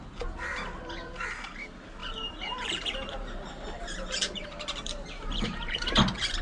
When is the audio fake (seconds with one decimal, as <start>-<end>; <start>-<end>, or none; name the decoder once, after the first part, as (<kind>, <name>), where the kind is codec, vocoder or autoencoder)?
2.0-5.8 (vocoder, BigVGAN v2)